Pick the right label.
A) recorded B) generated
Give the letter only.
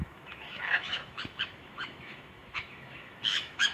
B